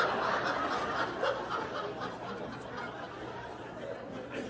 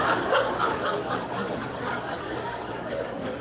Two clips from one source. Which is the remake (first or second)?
second